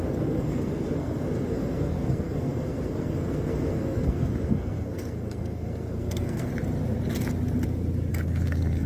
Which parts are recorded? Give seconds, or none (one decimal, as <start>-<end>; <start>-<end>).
6.5-8.1